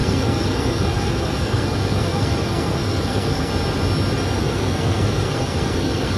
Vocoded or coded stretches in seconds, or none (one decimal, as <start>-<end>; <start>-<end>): 0.0-3.5; 4.4-6.2